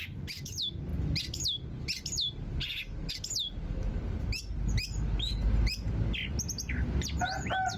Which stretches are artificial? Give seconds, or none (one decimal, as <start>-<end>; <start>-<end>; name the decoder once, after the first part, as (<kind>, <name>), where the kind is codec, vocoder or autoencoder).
none